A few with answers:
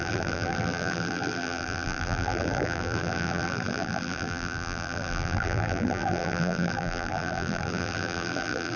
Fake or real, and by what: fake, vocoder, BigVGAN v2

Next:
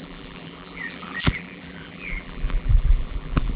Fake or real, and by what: fake, vocoder, BigVGAN v2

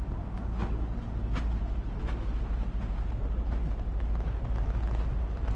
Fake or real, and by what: real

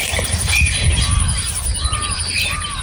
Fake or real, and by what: fake, vocoder, BigVGAN v2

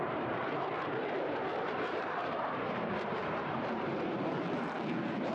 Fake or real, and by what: fake, vocoder, BigVGAN v2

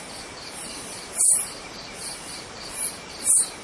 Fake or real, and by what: fake, vocoder, BigVGAN v2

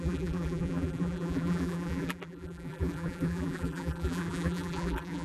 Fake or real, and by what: fake, vocoder, BigVGAN v2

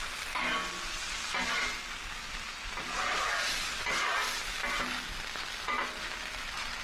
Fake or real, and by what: real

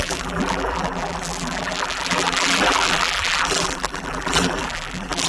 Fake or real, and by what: fake, vocoder, BigVGAN v2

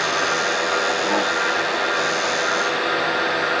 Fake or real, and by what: real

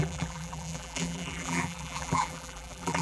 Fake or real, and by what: fake, vocoder, BigVGAN v2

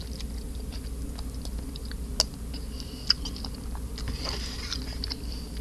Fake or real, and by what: real